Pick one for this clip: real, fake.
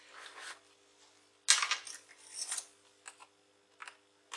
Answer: real